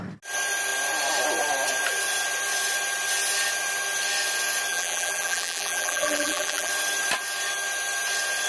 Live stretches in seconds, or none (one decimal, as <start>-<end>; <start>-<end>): 0.0-4.7; 6.7-8.5